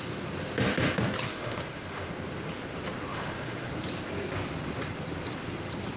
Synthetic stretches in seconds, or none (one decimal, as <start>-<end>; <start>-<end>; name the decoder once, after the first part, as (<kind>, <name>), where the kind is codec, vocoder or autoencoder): 1.3-2.1 (autoencoder, DAC-VAE); 3.1-3.7